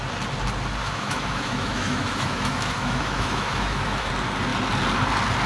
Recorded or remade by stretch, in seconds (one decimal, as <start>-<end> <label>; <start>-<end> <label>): 0.0-0.8 recorded; 0.8-4.1 remade; 4.1-5.5 recorded